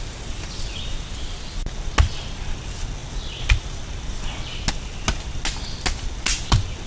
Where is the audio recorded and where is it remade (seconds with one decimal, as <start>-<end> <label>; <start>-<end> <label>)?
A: 0.0-6.9 recorded